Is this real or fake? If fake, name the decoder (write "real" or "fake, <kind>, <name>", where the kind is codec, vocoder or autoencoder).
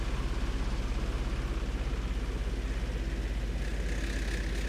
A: real